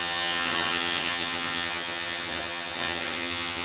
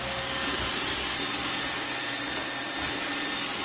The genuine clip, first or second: second